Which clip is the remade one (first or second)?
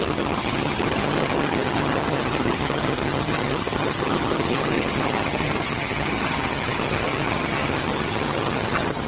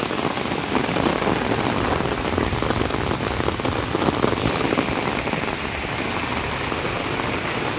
first